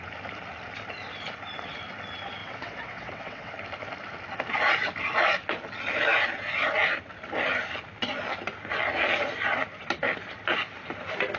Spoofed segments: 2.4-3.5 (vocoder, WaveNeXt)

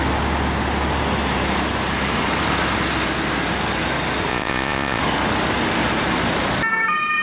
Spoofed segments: 4.3-5.0 (vocoder, Vocos)

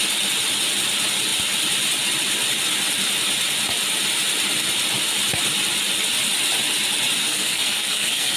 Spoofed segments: 7.2-8.4 (codec, SNAC)

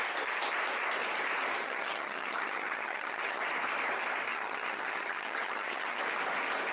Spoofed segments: 1.6-3.4 (vocoder, HiFi-GAN); 4.3-6.0

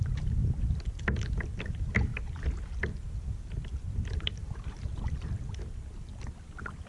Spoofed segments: none

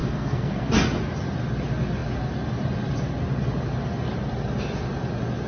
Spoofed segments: 0.0-0.7 (codec, SNAC)